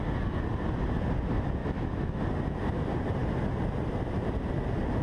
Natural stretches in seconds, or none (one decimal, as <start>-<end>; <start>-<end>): 0.0-1.6; 2.2-5.0